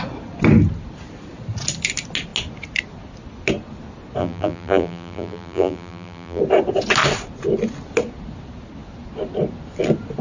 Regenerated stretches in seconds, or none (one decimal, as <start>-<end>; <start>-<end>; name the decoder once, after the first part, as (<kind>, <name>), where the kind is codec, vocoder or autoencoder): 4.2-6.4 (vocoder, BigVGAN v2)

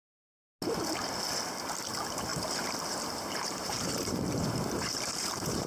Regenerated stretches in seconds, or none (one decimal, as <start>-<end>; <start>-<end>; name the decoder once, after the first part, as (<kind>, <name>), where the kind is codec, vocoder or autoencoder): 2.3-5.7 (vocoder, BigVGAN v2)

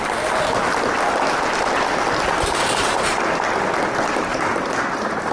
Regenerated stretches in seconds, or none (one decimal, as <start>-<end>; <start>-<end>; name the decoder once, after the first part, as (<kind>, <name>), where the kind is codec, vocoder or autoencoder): 4.3-5.3 (vocoder, BigVGAN v2)